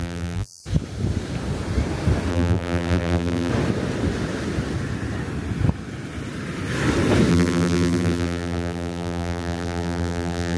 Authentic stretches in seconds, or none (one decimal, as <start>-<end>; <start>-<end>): 0.6-2.3; 3.5-7.3